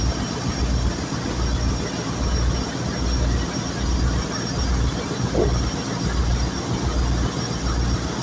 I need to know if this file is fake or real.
real